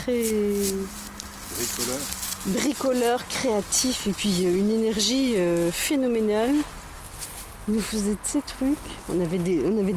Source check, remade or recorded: recorded